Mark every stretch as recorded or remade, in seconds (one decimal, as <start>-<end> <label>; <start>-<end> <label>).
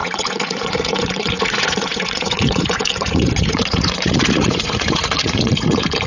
0.0-6.1 remade